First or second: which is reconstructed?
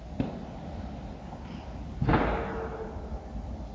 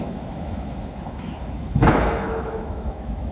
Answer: second